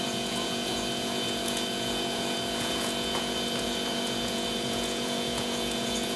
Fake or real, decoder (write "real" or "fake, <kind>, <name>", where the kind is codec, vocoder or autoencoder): fake, vocoder, Vocos